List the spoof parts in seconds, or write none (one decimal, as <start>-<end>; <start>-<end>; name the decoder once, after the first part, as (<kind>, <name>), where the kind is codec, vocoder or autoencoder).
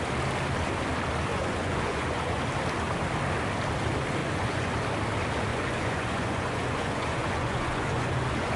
1.3-2.4 (vocoder, Vocos); 4.2-4.7; 5.5-8.6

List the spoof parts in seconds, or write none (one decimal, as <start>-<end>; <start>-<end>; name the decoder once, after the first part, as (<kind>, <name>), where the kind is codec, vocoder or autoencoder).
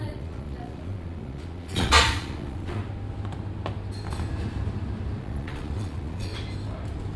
0.0-2.8 (vocoder, Vocos); 5.2-6.3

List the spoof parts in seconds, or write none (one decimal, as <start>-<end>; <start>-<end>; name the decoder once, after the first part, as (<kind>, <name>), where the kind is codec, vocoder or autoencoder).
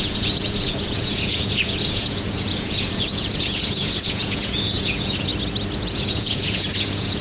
0.0-5.3 (vocoder, Vocos); 5.8-7.2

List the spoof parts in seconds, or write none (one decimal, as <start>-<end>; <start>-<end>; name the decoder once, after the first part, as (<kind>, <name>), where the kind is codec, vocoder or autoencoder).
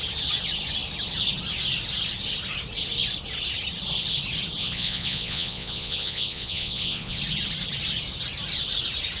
4.6-7.2 (vocoder, Vocos)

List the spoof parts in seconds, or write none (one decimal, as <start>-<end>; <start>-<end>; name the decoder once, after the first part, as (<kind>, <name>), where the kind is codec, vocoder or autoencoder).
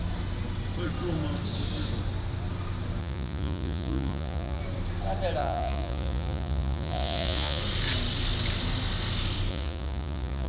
3.0-4.6 (vocoder, Vocos); 5.4-7.6; 9.5-10.5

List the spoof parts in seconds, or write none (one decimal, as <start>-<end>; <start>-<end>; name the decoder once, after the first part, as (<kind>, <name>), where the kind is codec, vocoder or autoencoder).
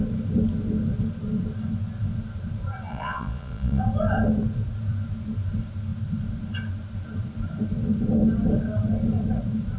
2.9-3.8 (vocoder, Vocos)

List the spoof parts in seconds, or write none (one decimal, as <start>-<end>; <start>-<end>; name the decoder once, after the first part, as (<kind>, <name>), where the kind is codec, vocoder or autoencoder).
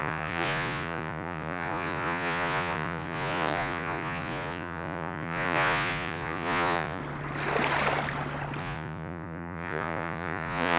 0.0-7.0 (vocoder, Vocos); 8.6-10.8